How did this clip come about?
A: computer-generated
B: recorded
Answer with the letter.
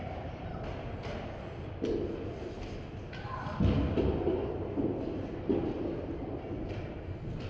B